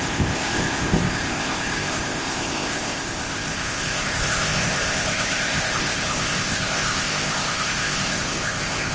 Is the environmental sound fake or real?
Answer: fake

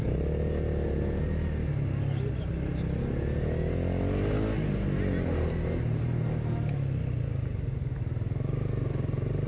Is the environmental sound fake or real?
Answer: real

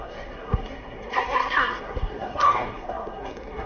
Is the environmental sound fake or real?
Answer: fake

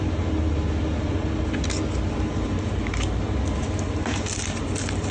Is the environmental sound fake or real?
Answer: real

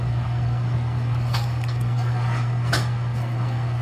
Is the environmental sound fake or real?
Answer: fake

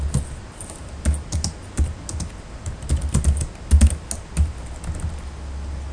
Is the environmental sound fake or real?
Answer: real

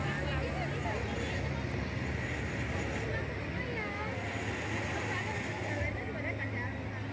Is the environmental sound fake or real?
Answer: real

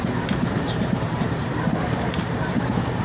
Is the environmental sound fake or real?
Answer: fake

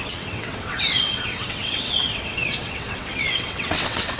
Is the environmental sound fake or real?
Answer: fake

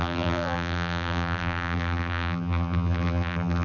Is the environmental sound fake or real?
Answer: fake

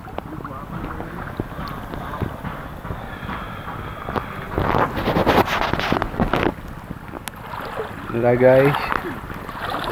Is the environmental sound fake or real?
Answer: real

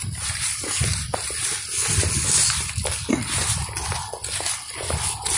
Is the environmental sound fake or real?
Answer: real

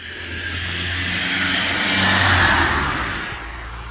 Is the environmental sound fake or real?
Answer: real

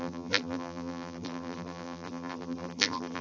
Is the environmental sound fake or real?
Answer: fake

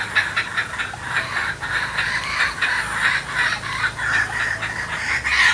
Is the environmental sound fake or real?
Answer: real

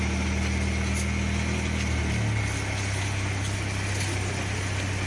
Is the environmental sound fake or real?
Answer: real